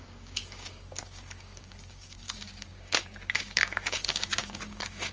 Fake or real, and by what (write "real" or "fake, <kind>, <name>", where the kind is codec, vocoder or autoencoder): fake, codec, DAC